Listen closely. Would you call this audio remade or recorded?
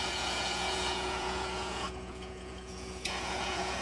remade